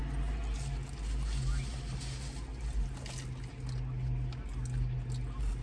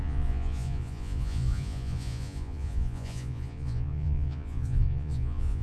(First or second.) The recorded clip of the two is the first